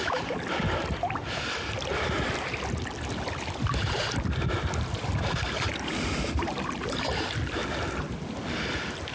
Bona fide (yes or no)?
yes